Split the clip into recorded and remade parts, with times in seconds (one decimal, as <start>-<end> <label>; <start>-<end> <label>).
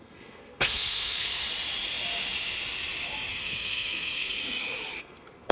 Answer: 0.0-1.4 remade; 1.4-3.3 recorded; 3.3-4.4 remade; 4.4-5.0 recorded; 5.0-5.5 remade